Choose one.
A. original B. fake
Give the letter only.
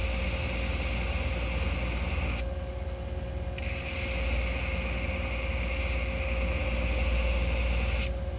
A